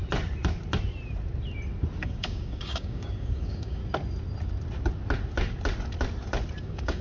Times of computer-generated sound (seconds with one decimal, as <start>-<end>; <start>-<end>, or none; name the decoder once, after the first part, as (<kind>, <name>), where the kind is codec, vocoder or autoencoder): 2.0-3.8 (codec, DAC); 6.6-7.0